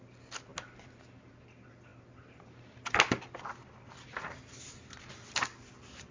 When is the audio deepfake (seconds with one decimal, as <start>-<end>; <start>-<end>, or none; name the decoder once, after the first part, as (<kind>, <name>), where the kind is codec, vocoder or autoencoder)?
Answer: none